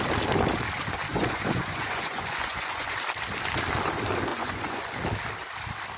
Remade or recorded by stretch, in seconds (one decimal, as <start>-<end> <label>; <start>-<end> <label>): 0.0-1.1 recorded; 1.1-2.9 remade; 2.9-4.3 recorded; 4.3-4.9 remade; 4.9-6.0 recorded